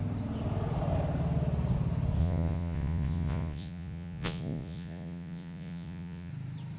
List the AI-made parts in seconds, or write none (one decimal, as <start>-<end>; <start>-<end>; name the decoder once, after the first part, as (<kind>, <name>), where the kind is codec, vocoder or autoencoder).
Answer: 2.2-6.3 (vocoder, Vocos)